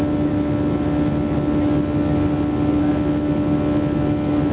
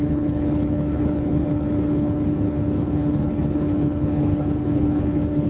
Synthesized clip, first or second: second